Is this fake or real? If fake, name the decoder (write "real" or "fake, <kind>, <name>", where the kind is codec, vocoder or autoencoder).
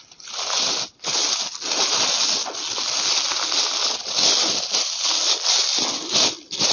real